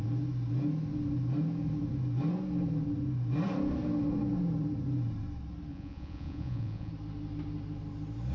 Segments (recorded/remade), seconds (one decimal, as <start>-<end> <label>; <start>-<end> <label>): 0.0-5.7 recorded; 5.7-6.9 remade; 6.9-8.3 recorded